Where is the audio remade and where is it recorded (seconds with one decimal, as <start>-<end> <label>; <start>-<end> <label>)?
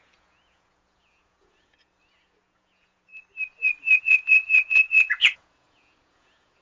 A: 0.0-3.1 remade; 3.1-4.0 recorded; 4.0-6.6 remade